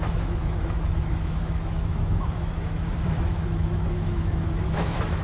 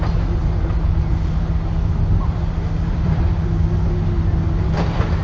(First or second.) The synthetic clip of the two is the first